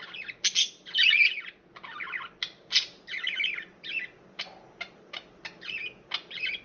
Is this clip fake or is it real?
real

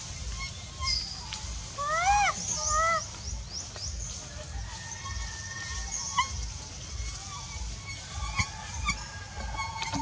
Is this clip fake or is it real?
real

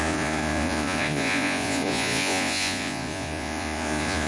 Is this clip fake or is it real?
fake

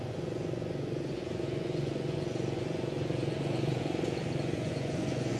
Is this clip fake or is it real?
fake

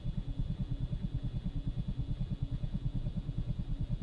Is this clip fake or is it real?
real